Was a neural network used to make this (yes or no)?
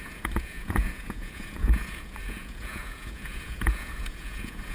yes